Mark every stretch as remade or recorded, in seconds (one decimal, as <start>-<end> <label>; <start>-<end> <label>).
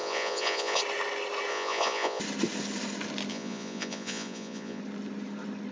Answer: 0.0-0.8 remade; 0.8-1.5 recorded; 1.5-2.2 remade; 2.2-3.3 recorded; 3.3-4.8 remade; 4.8-5.7 recorded